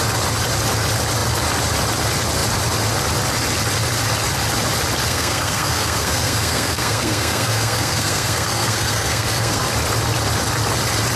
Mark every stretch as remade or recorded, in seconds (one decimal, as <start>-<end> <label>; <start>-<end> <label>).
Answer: 0.0-5.0 recorded; 5.0-9.6 remade; 9.6-11.2 recorded